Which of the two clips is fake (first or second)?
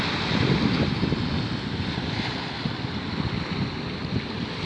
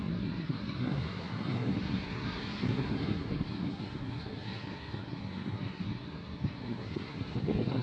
second